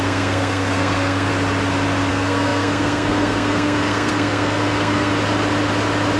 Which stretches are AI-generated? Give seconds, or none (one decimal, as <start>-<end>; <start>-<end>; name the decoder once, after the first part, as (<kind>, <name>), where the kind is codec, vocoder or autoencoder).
0.0-1.3 (codec, SNAC); 2.1-5.1